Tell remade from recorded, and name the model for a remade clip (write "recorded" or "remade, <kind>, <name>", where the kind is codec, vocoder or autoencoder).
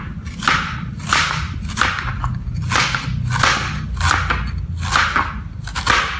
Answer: recorded